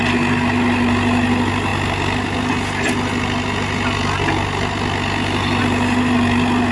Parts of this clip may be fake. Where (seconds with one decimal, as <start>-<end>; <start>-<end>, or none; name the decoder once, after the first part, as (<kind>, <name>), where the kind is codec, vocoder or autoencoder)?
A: none